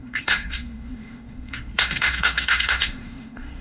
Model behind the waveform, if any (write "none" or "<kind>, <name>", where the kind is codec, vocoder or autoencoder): codec, SNAC